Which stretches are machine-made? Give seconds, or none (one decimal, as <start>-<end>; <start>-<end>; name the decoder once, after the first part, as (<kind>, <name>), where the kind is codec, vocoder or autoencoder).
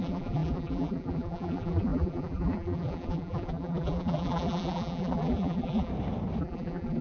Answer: 0.0-5.9 (vocoder, BigVGAN v2); 6.4-7.0